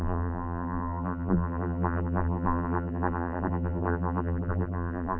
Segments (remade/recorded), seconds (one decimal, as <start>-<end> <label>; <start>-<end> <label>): 0.0-5.2 remade